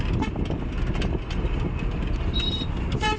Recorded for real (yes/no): yes